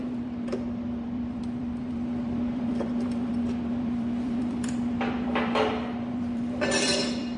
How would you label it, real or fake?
fake